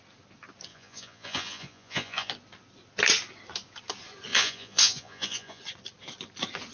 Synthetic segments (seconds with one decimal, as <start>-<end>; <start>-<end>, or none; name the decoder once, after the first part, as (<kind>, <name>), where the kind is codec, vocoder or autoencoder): 0.7-2.3 (vocoder, Vocos); 4.3-5.6